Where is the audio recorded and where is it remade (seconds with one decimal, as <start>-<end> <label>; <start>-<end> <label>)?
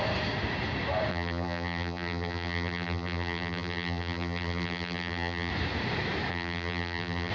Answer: 0.0-1.1 recorded; 1.1-5.5 remade; 5.5-6.3 recorded; 6.3-7.3 remade